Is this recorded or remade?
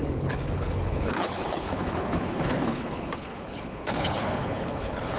remade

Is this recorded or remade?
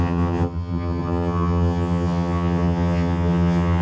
remade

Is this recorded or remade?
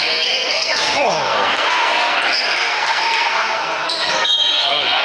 remade